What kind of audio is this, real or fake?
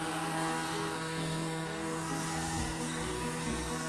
fake